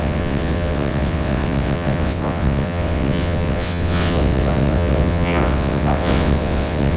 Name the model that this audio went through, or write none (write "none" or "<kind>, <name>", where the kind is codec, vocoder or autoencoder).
vocoder, WaveNeXt